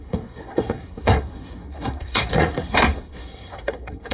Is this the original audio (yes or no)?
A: no